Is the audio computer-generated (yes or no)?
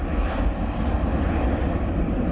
no